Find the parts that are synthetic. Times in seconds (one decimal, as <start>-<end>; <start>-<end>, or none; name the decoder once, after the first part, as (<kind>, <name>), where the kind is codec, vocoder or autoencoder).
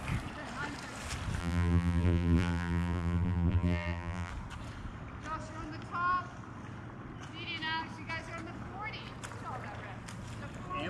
1.4-4.3 (vocoder, BigVGAN v2)